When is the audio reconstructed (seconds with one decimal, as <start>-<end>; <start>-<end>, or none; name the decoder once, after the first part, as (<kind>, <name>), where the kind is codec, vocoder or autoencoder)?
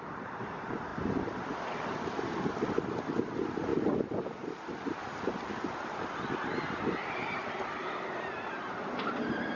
0.0-0.9 (vocoder, BigVGAN v2); 1.5-9.6